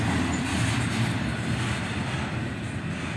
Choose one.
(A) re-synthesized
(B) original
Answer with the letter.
B